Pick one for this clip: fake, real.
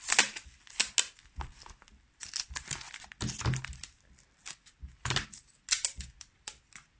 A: real